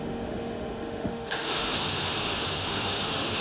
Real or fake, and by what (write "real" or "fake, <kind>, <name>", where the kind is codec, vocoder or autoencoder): fake, autoencoder, DAC-VAE